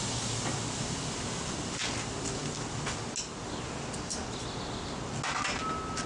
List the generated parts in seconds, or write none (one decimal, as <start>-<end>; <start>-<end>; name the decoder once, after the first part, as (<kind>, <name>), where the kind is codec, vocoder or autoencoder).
none